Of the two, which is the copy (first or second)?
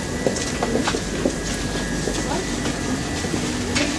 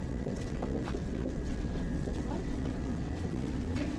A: second